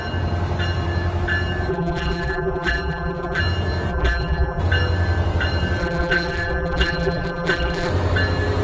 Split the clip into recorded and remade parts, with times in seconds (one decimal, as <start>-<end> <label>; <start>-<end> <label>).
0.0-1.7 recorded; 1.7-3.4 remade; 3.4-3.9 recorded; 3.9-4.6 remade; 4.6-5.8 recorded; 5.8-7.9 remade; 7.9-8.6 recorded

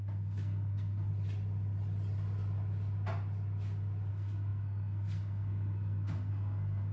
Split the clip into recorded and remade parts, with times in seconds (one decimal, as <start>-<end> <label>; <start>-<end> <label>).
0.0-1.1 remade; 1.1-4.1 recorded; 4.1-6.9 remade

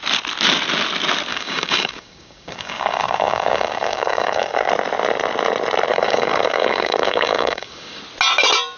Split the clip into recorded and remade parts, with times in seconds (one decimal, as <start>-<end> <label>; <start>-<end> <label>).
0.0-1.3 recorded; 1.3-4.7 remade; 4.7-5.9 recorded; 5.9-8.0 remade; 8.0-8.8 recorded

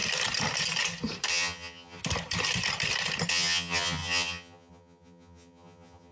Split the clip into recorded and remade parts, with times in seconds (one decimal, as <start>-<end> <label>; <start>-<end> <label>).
0.0-1.3 recorded; 1.3-2.0 remade; 2.0-3.3 recorded; 3.3-6.1 remade

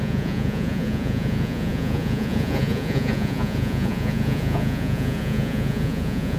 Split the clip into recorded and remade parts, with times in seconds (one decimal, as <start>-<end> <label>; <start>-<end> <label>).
0.0-6.4 remade